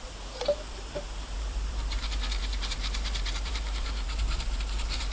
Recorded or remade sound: remade